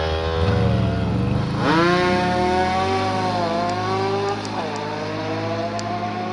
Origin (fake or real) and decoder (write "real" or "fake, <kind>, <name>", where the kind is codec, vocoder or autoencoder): real